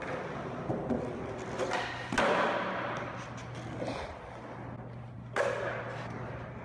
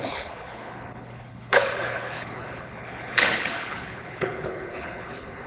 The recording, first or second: first